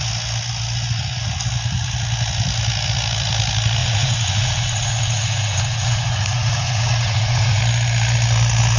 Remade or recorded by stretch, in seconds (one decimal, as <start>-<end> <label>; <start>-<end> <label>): 0.0-3.8 recorded; 3.8-7.6 remade; 7.6-8.8 recorded